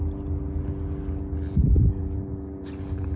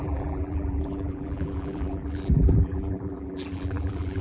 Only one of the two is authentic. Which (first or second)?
first